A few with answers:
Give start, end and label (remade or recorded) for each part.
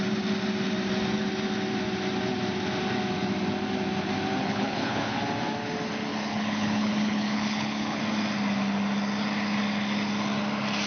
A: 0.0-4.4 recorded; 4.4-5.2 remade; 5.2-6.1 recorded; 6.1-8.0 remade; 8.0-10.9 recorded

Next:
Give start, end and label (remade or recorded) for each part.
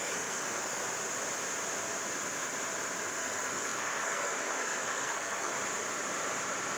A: 0.0-0.8 remade; 0.8-3.1 recorded; 3.1-5.5 remade; 5.5-6.8 recorded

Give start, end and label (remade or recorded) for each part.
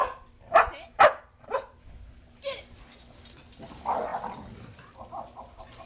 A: 0.0-4.1 recorded; 4.1-5.0 remade; 5.0-5.9 recorded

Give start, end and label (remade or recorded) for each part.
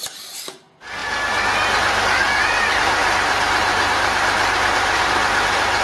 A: 0.0-3.0 recorded; 3.0-5.0 remade; 5.0-5.8 recorded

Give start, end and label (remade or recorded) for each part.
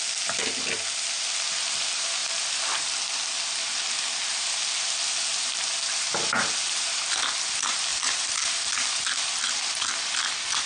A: 0.0-7.9 recorded; 7.9-10.1 remade; 10.1-10.7 recorded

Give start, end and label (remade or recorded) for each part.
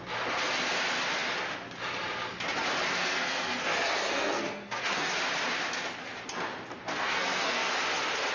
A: 0.0-3.0 recorded; 3.0-5.1 remade; 5.1-6.9 recorded; 6.9-7.8 remade; 7.8-8.3 recorded